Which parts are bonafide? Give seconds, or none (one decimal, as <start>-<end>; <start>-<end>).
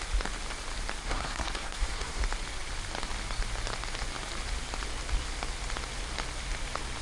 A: 0.0-1.0; 2.2-7.0